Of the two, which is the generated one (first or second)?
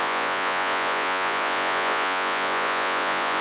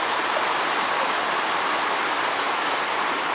first